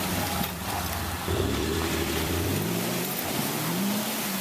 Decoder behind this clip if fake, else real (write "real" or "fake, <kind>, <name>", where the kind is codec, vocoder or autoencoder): fake, vocoder, BigVGAN v2